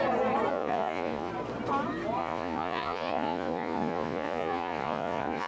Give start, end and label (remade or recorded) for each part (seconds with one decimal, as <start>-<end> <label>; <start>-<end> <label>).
0.0-0.5 recorded; 0.5-1.3 remade; 1.3-2.2 recorded; 2.2-5.5 remade